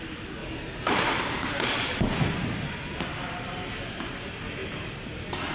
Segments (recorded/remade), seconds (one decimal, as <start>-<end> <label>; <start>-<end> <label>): 0.0-0.4 recorded; 0.4-2.6 remade; 2.6-5.5 recorded